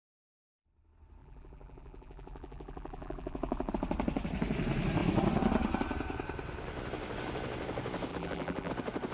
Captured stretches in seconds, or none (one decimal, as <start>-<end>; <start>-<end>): 0.0-1.2; 3.7-8.1; 8.7-9.1